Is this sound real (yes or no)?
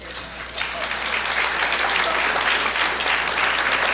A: yes